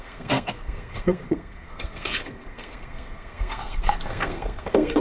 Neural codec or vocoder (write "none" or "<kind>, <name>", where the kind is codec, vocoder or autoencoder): codec, SNAC